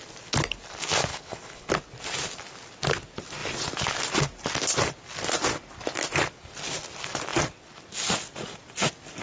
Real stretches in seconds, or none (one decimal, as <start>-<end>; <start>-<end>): 0.0-1.1; 1.7-9.2